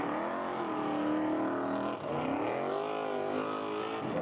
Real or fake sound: real